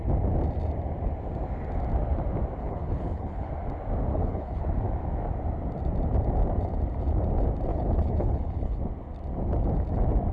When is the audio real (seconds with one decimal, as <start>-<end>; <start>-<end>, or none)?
0.0-2.6; 3.5-4.1; 4.6-7.7; 8.8-10.3